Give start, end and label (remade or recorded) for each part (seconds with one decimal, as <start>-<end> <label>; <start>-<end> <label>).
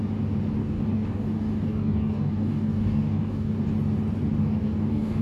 0.0-0.6 recorded; 0.6-3.6 remade; 3.6-4.4 recorded; 4.4-5.2 remade